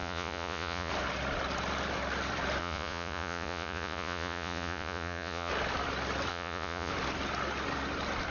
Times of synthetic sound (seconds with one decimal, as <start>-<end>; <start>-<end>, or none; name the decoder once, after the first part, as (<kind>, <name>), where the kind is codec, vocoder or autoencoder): 0.0-0.9 (vocoder, Vocos); 2.6-5.5; 6.3-6.9